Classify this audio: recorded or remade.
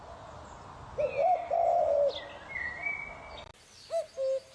recorded